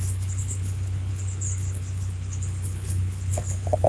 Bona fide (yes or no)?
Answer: no